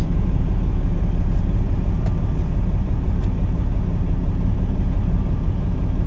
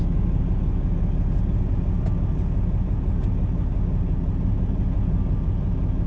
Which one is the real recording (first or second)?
second